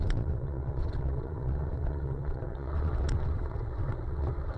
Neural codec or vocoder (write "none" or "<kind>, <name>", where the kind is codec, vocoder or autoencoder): vocoder, WaveNeXt